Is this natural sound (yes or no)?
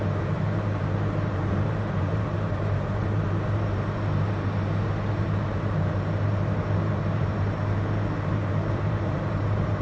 no